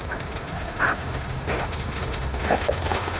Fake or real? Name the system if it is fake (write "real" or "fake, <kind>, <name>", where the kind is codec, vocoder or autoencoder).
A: fake, autoencoder, DAC-VAE